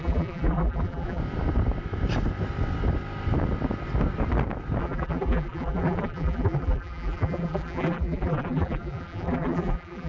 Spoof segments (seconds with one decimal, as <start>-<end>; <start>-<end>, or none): 0.0-1.2; 4.8-10.1